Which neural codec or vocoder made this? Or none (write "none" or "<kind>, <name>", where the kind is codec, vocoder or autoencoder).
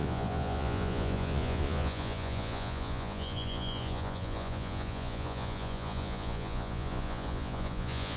vocoder, Vocos